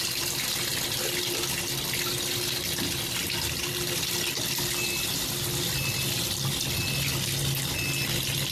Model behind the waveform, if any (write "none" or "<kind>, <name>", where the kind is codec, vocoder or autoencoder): none